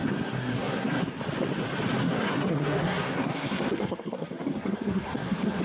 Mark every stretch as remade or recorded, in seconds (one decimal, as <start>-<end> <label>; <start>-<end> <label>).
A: 0.0-1.2 remade; 1.2-2.0 recorded; 2.0-5.6 remade